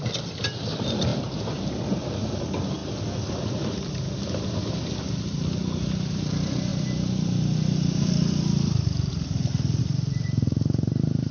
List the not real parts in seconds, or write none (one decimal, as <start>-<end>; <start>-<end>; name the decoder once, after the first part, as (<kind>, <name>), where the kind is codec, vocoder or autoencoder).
0.0-11.3 (vocoder, BigVGAN v2)